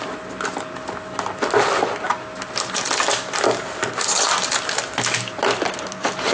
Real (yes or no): yes